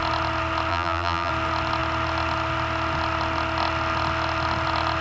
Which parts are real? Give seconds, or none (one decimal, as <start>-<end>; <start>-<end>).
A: 0.0-0.7; 1.3-5.0